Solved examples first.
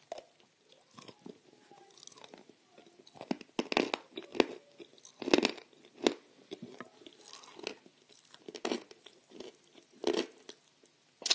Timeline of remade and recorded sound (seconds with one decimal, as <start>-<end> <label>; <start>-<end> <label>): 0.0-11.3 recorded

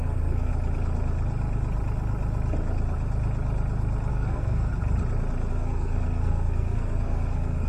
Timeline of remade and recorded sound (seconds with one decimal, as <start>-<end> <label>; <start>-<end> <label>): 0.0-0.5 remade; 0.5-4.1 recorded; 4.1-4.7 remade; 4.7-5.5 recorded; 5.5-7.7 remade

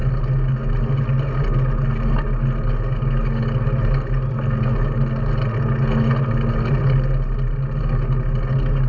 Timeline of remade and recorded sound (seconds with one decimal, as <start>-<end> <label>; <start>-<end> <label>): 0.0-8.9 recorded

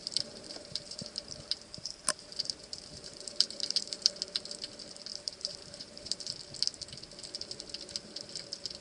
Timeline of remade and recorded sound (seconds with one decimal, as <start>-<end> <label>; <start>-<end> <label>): 0.0-4.1 remade; 4.1-5.1 recorded; 5.1-6.3 remade; 6.3-8.8 recorded